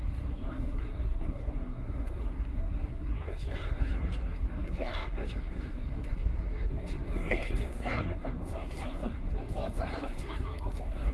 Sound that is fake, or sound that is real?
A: fake